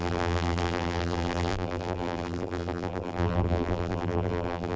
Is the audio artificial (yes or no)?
yes